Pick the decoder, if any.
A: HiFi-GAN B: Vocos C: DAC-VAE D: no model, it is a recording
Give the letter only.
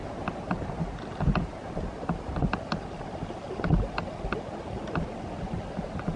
D